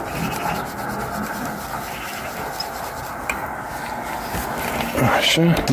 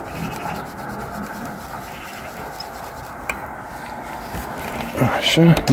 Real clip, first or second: first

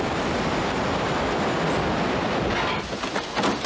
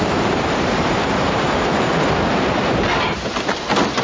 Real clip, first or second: first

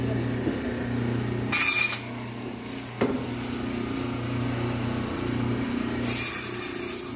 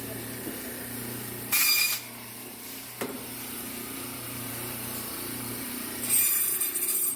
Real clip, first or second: first